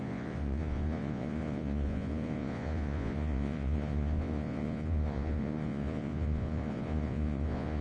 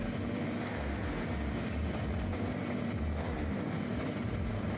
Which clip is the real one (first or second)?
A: second